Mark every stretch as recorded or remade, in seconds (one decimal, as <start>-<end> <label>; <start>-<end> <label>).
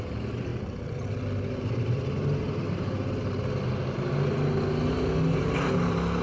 0.0-0.5 recorded; 0.5-1.1 remade; 1.1-6.2 recorded